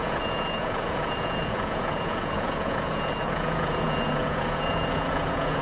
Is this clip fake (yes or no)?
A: yes